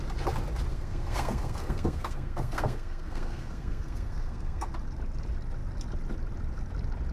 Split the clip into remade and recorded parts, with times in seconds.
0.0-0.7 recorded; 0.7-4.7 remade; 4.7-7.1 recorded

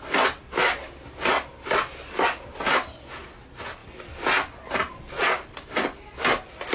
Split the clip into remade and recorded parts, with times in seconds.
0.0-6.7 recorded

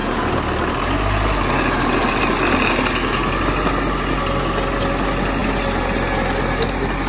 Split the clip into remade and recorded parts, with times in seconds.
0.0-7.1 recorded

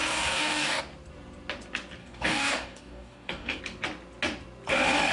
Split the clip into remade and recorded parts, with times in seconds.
0.0-0.8 remade; 0.8-2.0 recorded; 2.0-3.6 remade; 3.6-5.1 recorded

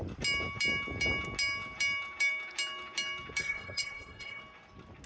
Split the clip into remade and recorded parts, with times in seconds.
0.0-3.4 recorded; 3.4-4.4 remade; 4.4-5.1 recorded